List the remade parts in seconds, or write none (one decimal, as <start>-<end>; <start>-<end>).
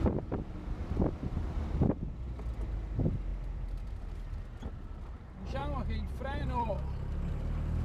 0.8-2.7; 3.3-4.4; 5.6-6.7